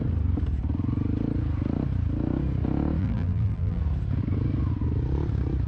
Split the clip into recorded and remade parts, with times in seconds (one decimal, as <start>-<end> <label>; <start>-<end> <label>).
0.0-3.0 recorded; 3.0-3.8 remade; 3.8-5.7 recorded